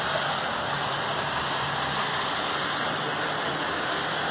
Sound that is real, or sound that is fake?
real